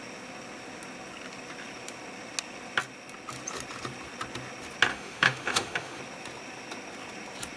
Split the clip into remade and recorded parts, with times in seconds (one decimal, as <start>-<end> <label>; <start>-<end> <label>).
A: 0.0-4.9 recorded; 4.9-6.0 remade; 6.0-7.6 recorded